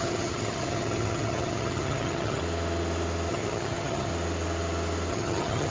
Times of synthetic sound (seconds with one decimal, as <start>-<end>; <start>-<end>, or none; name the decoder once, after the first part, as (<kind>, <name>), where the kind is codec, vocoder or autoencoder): 0.0-2.4 (vocoder, HiFi-GAN); 3.3-4.1; 5.1-5.7